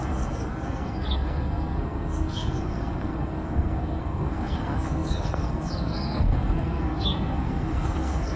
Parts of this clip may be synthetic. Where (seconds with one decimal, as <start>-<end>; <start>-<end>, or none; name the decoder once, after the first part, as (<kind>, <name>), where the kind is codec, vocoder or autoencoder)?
0.0-8.4 (codec, SNAC)